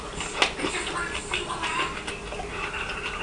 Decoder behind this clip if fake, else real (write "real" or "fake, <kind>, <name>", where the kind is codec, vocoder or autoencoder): real